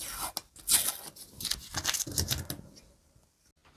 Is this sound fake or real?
real